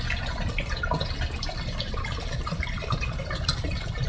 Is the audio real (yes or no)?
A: yes